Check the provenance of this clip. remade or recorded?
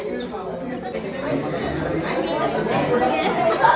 recorded